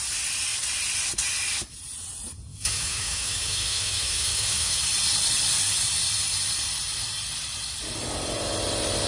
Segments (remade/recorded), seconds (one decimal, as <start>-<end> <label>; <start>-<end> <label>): 0.0-2.5 recorded; 2.5-4.8 remade; 4.8-9.1 recorded